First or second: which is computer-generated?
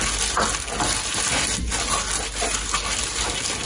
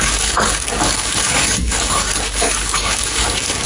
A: second